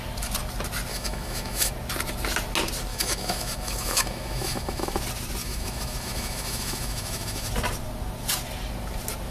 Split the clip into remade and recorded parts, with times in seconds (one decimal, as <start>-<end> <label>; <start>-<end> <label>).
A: 0.0-0.9 recorded; 0.9-1.7 remade; 1.7-2.9 recorded; 2.9-5.0 remade; 5.0-5.4 recorded; 5.4-7.5 remade; 7.5-9.3 recorded